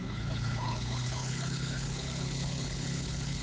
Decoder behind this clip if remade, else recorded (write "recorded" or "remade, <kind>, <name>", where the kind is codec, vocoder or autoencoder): remade, codec, HILCodec